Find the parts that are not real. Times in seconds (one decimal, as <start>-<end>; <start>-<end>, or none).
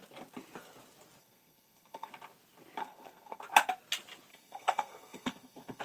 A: 1.2-2.1; 2.8-3.4; 4.3-5.8